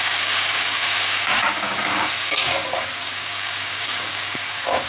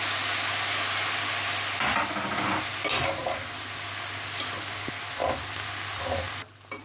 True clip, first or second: second